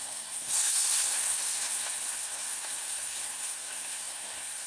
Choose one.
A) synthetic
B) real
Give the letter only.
A